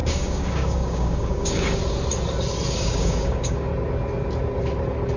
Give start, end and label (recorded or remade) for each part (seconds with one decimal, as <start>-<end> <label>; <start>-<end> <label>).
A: 0.0-1.8 remade; 1.8-2.7 recorded; 2.7-3.7 remade; 3.7-5.2 recorded